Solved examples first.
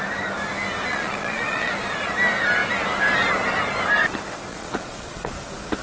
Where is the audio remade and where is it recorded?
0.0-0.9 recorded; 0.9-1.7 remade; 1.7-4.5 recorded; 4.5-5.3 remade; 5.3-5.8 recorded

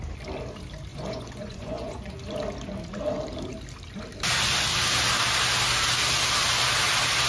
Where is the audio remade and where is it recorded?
0.0-0.9 recorded; 0.9-2.1 remade; 2.1-7.3 recorded